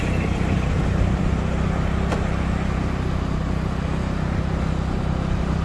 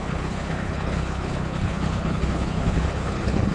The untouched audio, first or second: first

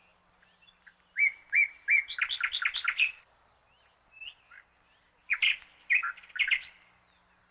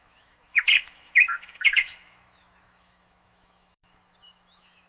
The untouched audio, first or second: first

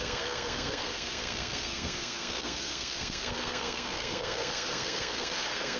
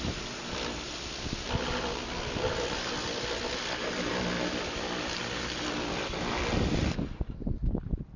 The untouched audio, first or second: second